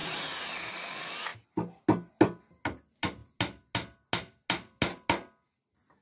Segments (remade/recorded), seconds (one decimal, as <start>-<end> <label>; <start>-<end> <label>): 0.0-6.0 recorded